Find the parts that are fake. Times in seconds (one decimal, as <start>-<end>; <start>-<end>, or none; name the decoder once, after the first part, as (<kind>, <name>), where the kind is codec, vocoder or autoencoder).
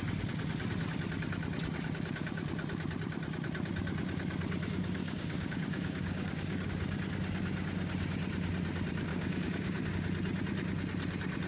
5.0-6.7 (codec, DAC); 9.1-9.9